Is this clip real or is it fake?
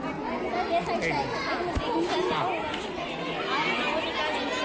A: real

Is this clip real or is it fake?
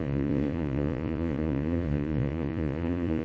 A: fake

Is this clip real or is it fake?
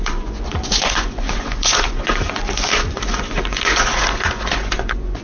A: fake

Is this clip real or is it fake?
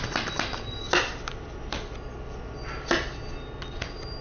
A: real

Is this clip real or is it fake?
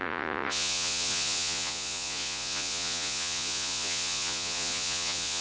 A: fake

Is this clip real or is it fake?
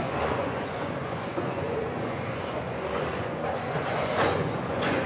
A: fake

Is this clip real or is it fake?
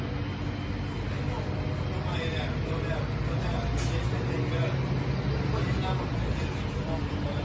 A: real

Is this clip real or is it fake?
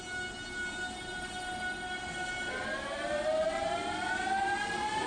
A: real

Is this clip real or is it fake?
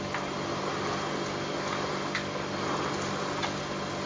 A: real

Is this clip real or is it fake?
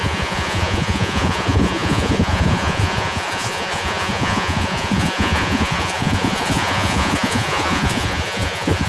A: fake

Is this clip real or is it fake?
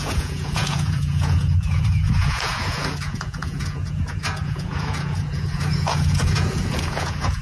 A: fake